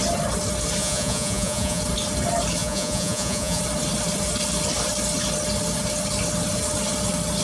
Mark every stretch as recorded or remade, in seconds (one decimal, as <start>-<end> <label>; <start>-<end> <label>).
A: 0.0-0.8 recorded; 0.8-1.8 remade; 1.8-2.6 recorded; 2.6-3.6 remade; 3.6-7.4 recorded